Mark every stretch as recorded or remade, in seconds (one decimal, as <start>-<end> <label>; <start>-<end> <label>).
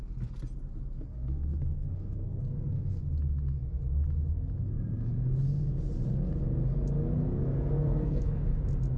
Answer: 0.0-1.1 recorded; 1.1-3.0 remade; 3.0-7.4 recorded; 7.4-8.4 remade; 8.4-9.0 recorded